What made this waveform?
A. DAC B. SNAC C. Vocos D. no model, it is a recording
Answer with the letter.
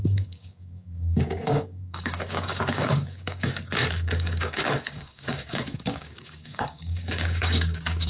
A